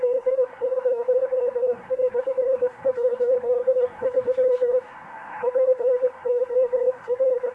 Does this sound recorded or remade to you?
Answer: remade